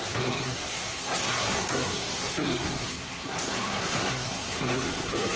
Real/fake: fake